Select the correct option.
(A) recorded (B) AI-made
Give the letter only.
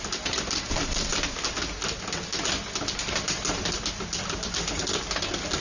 A